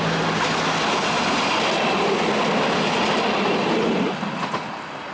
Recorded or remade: recorded